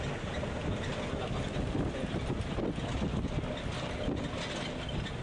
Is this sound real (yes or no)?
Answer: yes